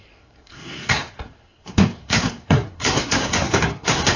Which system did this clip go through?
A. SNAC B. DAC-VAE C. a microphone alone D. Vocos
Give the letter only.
A